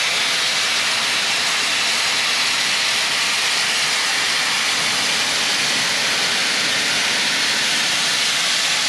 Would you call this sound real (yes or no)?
yes